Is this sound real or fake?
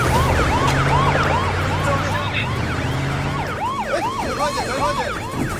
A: real